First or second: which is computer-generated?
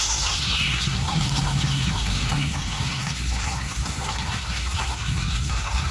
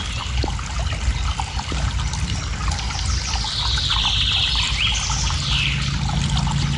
first